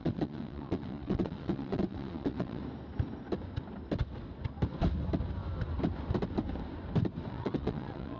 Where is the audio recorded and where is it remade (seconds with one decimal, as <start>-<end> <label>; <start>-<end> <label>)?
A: 0.0-2.6 remade; 2.6-7.3 recorded; 7.3-8.2 remade